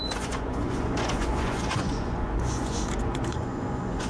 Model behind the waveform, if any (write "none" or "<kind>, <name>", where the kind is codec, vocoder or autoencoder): vocoder, Vocos